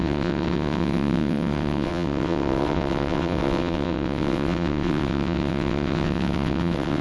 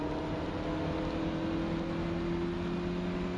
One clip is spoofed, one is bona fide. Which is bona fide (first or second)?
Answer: second